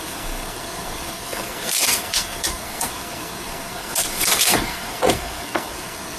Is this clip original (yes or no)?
no